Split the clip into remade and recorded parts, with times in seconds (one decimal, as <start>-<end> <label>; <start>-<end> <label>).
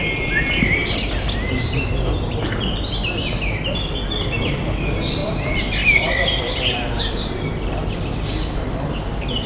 0.0-5.2 recorded; 5.2-6.9 remade; 6.9-9.5 recorded